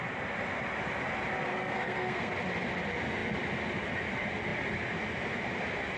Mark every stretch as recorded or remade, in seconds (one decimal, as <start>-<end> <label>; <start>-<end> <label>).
0.0-1.5 recorded; 1.5-2.3 remade; 2.3-6.0 recorded